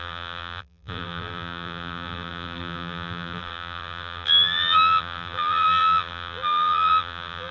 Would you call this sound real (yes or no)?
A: no